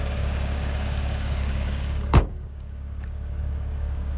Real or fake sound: fake